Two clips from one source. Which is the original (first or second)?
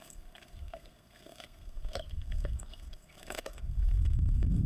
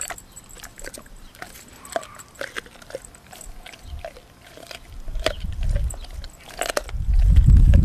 second